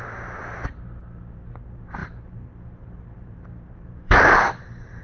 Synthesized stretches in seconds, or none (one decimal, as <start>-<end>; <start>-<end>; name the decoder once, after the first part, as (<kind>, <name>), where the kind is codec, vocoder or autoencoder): 2.0-5.0 (vocoder, BigVGAN v2)